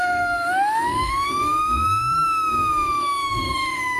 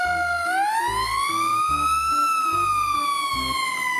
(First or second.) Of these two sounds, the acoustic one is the second